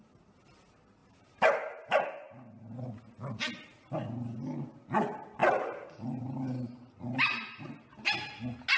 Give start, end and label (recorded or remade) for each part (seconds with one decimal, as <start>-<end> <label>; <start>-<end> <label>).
0.0-1.0 recorded; 1.0-2.9 remade; 2.9-5.4 recorded; 5.4-6.9 remade; 6.9-8.8 recorded